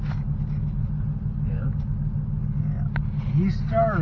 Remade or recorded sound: recorded